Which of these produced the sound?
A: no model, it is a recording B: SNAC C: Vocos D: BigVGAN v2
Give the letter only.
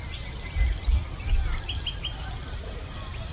A